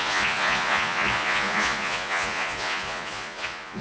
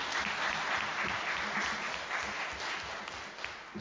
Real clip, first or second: second